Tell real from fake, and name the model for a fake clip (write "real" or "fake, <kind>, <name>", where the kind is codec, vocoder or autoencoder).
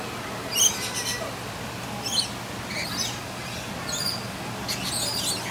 real